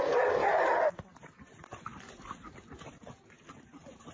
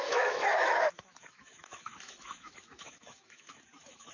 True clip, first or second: first